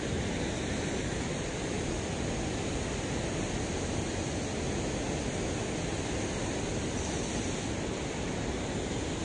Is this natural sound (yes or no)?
yes